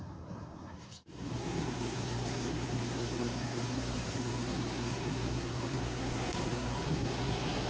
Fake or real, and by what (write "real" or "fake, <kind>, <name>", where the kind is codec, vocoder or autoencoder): fake, codec, SNAC